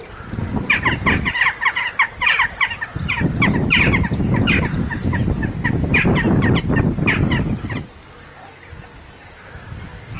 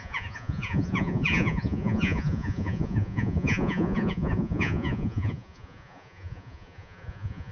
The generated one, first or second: second